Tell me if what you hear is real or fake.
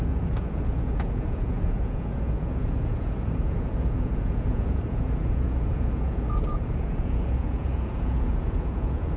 fake